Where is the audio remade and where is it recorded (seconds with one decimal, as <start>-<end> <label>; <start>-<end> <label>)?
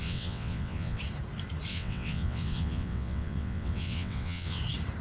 0.0-1.0 remade; 1.0-1.7 recorded; 1.7-4.6 remade; 4.6-5.0 recorded